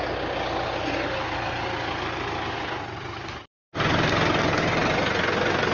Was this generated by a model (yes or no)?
no